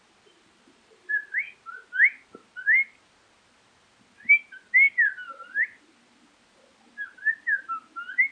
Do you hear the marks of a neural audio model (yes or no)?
no